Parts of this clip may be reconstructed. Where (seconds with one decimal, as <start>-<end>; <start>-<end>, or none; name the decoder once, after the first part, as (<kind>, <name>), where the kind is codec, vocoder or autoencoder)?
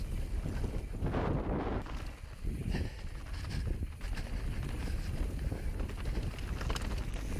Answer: none